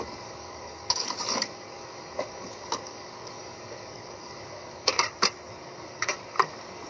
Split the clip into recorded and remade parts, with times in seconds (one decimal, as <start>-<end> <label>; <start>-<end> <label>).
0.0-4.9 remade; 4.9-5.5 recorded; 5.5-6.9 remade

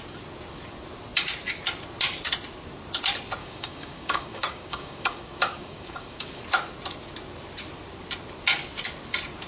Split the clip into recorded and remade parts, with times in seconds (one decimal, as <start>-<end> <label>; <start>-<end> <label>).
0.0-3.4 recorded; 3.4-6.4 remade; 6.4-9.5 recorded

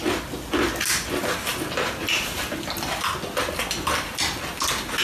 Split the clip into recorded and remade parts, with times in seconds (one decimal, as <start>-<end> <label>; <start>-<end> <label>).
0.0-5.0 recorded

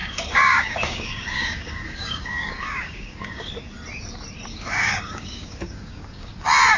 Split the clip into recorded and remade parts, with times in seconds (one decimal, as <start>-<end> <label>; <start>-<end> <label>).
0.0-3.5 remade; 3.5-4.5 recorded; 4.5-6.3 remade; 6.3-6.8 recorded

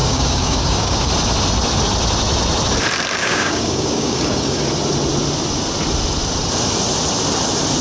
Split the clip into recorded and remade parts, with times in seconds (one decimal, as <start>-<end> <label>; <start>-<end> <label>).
0.0-1.1 remade; 1.1-3.2 recorded; 3.2-4.6 remade; 4.6-7.8 recorded

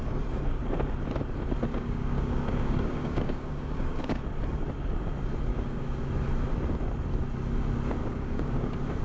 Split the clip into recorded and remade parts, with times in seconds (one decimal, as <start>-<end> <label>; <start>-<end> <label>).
0.0-1.7 recorded; 1.7-4.2 remade; 4.2-5.5 recorded; 5.5-6.1 remade; 6.1-8.0 recorded; 8.0-9.0 remade

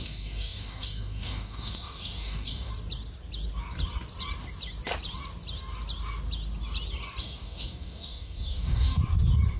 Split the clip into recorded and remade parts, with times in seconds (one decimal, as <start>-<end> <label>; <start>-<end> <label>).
0.0-2.7 remade; 2.7-7.2 recorded; 7.2-9.0 remade; 9.0-9.6 recorded

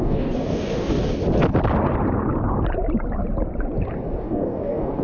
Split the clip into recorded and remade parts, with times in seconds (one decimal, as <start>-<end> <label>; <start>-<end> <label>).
0.0-1.2 remade; 1.2-4.2 recorded; 4.2-5.0 remade